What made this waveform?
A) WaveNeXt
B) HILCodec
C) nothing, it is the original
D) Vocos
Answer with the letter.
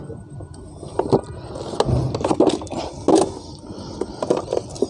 C